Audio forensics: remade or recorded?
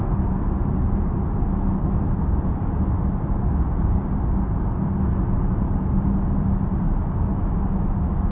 recorded